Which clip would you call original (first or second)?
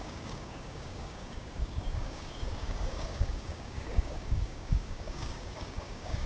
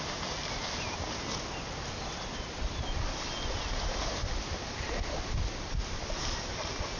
second